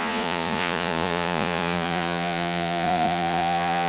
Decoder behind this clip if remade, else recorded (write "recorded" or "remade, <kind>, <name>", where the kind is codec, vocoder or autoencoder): remade, vocoder, Vocos